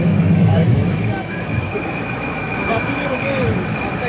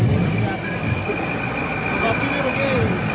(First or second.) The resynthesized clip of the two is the first